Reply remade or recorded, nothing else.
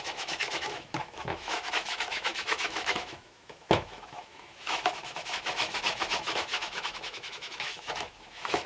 remade